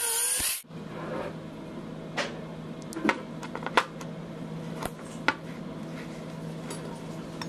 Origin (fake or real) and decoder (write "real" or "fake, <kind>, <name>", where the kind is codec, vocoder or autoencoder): real